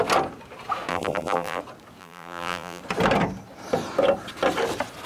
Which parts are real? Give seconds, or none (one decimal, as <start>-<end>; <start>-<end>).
0.0-0.9; 1.6-2.0; 2.8-5.1